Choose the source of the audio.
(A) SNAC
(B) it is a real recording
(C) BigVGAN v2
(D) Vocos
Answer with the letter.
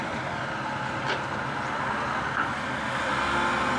B